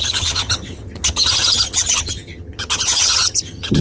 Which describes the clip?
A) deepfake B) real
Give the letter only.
A